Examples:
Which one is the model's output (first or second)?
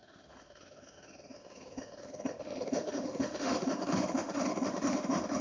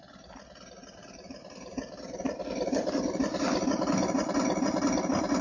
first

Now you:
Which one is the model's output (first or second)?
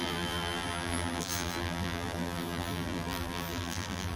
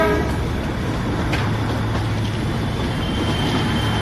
first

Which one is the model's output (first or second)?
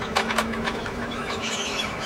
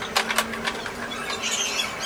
first